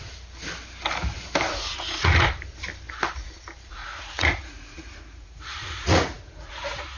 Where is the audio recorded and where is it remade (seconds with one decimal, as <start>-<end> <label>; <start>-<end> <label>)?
0.0-1.7 recorded; 1.7-2.3 remade; 2.3-3.8 recorded; 3.8-7.0 remade